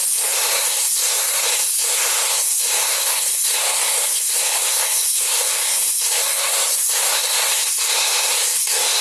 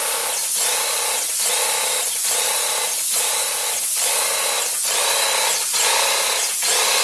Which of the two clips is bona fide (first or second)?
second